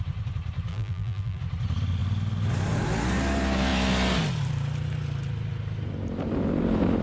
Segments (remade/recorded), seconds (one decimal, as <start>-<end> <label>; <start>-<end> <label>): 0.0-0.7 recorded; 0.7-1.4 remade; 1.4-7.0 recorded